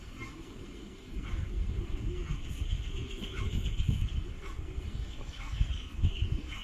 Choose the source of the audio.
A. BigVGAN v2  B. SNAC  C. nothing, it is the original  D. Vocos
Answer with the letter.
B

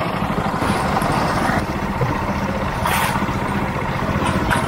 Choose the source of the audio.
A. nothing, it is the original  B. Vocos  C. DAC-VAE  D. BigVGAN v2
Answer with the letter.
D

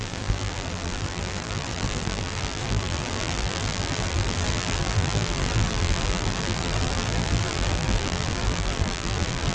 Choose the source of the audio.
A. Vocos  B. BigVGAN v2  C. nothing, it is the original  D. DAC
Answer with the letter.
B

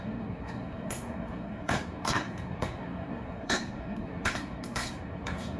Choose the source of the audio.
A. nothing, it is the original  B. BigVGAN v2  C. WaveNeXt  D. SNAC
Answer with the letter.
D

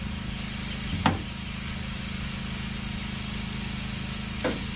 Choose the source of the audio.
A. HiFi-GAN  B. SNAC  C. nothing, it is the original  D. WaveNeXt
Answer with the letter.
C